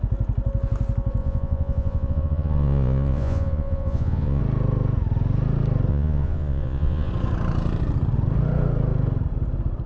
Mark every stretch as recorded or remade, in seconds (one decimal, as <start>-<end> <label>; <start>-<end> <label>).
0.0-1.2 recorded; 1.2-4.4 remade; 4.4-5.9 recorded; 5.9-7.1 remade; 7.1-9.9 recorded